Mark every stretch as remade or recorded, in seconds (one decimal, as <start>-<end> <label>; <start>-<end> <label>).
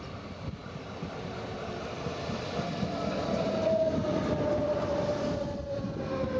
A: 0.0-0.6 recorded; 0.6-4.4 remade; 4.4-6.4 recorded